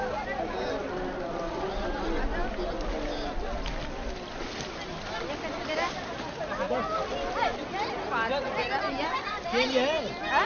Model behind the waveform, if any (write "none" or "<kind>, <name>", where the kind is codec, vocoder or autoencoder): none